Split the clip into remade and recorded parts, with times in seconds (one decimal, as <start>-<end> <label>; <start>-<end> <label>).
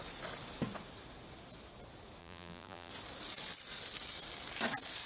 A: 0.0-2.2 recorded; 2.2-2.9 remade; 2.9-5.1 recorded